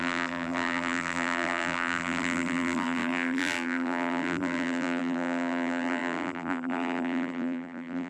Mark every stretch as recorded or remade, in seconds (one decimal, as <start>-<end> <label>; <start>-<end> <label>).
0.0-8.1 remade